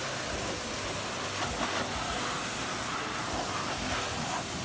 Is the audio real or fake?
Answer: real